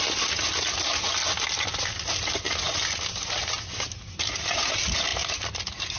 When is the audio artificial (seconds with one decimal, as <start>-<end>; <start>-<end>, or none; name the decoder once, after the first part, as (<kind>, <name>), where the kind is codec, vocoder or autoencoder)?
none